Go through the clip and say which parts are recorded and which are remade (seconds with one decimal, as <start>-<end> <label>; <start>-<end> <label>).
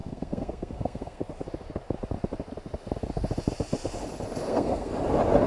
0.0-1.2 remade; 1.2-4.5 recorded; 4.5-4.9 remade; 4.9-5.5 recorded